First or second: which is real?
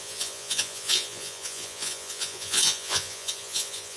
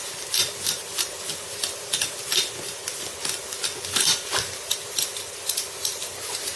second